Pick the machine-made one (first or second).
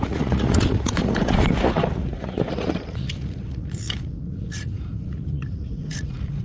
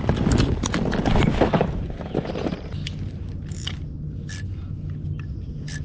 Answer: first